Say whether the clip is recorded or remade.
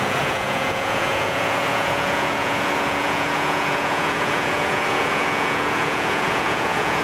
remade